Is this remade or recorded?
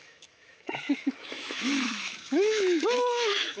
remade